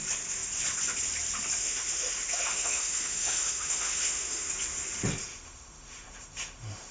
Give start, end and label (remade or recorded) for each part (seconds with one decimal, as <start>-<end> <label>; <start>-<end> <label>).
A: 0.0-1.6 recorded; 1.6-4.5 remade; 4.5-5.2 recorded; 5.2-6.9 remade